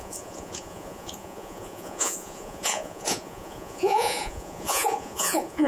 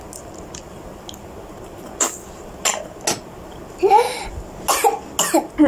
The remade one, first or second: first